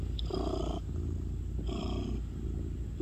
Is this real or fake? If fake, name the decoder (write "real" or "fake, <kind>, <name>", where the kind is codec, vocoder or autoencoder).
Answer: real